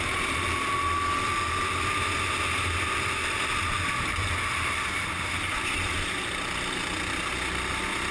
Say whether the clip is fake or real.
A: real